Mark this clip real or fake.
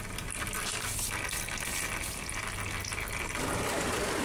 real